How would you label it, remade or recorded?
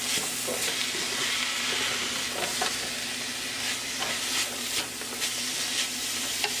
recorded